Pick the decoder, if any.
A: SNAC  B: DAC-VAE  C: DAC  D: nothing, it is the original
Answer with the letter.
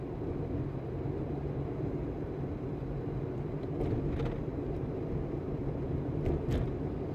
D